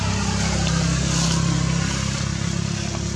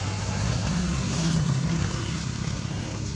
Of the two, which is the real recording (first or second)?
first